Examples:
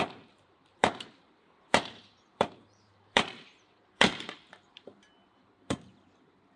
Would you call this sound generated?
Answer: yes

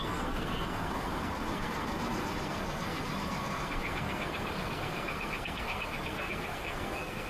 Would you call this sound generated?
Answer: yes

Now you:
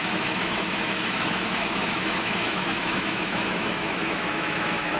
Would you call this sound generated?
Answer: yes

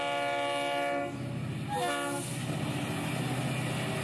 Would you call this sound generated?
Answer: no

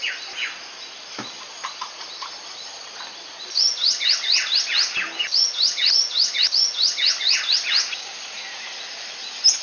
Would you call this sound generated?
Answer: no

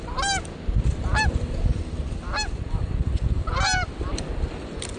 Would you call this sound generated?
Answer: no